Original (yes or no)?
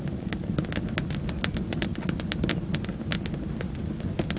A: yes